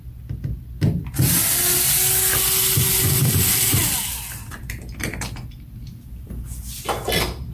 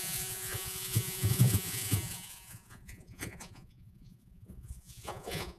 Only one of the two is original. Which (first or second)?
first